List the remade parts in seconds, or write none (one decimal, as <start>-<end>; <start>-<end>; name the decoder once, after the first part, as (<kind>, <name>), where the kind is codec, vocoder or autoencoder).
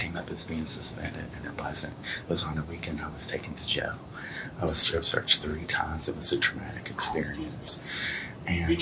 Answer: 0.0-3.8 (codec, DAC); 5.5-6.1